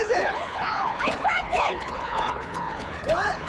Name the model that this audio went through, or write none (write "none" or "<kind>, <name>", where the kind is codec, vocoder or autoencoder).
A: codec, HILCodec